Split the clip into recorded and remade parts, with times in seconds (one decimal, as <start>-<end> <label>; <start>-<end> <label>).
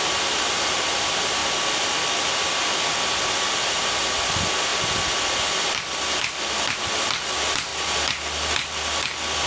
0.0-4.7 recorded; 4.7-6.8 remade; 6.8-9.5 recorded